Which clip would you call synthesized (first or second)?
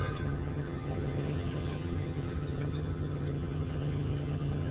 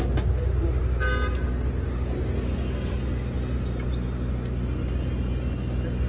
first